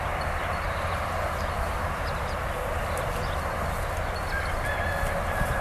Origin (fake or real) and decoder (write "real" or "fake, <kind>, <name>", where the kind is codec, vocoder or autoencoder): real